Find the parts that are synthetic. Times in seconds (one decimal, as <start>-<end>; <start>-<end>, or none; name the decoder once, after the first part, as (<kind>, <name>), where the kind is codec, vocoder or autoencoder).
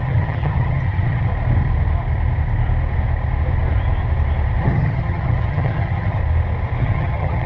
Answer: 0.0-1.3 (vocoder, HiFi-GAN); 4.6-6.2; 6.8-7.5